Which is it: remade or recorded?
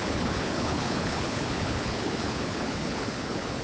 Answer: remade